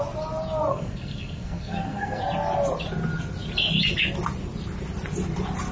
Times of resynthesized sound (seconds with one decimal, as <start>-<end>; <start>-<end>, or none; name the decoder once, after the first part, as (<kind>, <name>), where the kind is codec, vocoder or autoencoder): 0.7-2.2 (codec, SNAC)